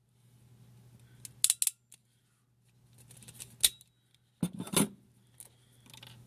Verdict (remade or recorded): recorded